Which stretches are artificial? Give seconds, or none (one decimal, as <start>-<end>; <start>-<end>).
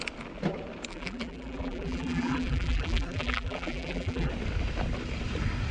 0.9-4.3